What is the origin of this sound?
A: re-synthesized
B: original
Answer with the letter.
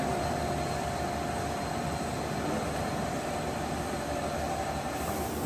B